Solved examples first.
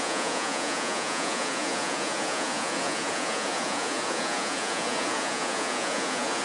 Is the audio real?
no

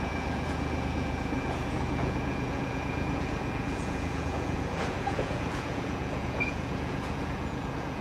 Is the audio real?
no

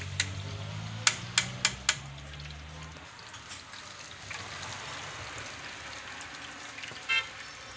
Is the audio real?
yes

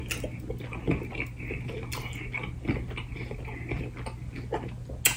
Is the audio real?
yes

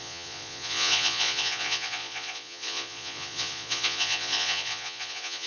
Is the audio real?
no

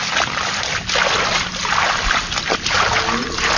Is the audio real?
yes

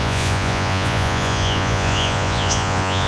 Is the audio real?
no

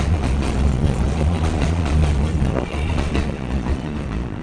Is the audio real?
no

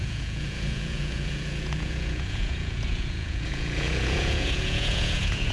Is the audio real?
no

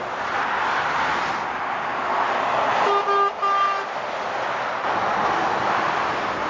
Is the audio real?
yes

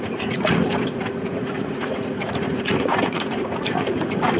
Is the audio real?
no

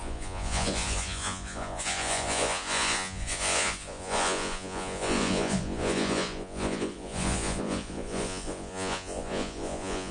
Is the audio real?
no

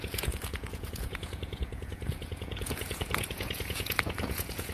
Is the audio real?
no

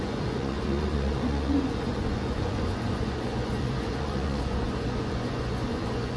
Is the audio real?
no